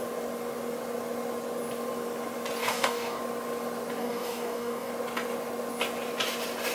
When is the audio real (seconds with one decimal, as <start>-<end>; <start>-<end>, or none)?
0.0-2.6; 3.2-4.0; 4.9-6.7

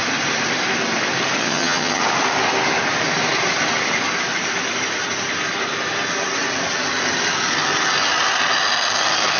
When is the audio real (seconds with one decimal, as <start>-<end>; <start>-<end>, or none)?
0.0-1.4; 2.0-9.4

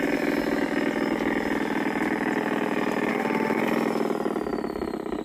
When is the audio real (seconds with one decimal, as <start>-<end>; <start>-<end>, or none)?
0.0-3.1; 3.6-5.2

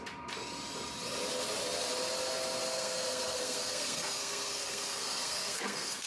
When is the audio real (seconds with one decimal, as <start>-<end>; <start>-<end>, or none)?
0.0-2.7